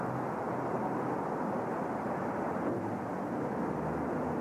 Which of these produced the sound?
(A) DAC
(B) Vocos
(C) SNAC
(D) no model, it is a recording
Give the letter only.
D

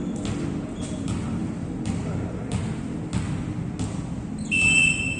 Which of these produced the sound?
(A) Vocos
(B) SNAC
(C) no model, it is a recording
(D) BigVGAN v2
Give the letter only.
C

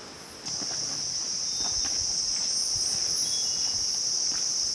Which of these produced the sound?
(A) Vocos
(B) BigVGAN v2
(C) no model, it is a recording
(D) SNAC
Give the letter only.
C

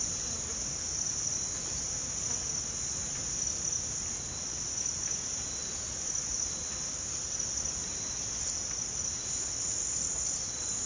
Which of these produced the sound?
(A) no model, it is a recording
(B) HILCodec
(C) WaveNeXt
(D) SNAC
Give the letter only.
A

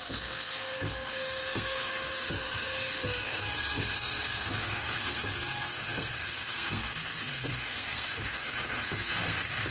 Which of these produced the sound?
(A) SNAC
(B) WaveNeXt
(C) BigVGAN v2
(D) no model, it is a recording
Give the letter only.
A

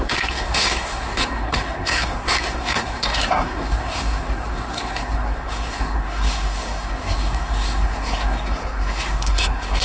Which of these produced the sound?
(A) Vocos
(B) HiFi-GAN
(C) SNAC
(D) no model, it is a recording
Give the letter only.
C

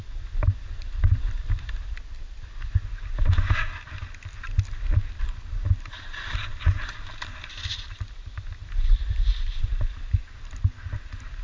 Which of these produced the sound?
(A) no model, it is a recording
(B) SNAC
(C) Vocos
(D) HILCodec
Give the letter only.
A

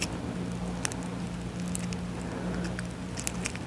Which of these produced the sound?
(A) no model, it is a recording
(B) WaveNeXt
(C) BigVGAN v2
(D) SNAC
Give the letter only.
A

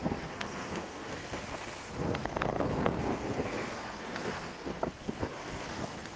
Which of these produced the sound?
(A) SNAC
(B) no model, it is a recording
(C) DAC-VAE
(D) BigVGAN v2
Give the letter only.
A